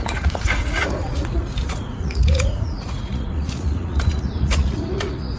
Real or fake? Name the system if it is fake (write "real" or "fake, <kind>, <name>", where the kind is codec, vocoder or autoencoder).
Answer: fake, vocoder, Vocos